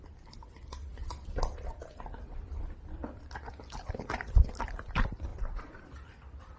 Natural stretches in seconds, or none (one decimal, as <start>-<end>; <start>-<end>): 0.0-0.9; 2.6-5.3; 5.9-6.6